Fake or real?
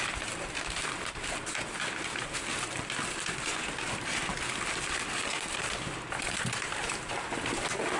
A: fake